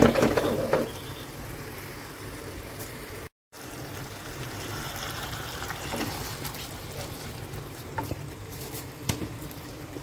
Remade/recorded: remade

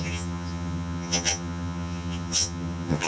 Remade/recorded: remade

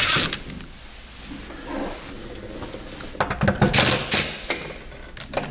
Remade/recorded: recorded